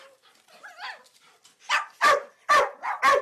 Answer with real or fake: real